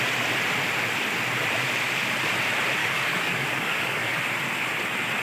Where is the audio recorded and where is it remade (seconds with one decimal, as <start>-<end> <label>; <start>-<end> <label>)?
0.0-2.8 recorded; 2.8-4.2 remade; 4.2-5.2 recorded